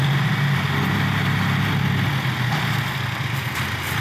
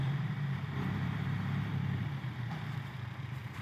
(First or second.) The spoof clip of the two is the second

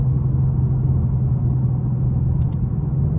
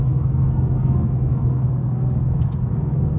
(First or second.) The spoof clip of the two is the second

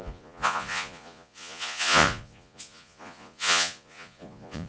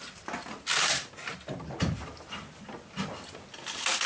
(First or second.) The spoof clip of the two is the first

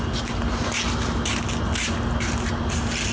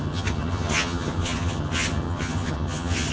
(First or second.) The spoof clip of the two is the second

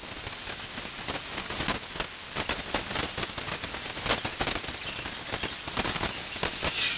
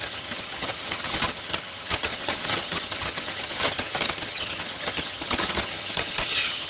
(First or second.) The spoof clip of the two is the second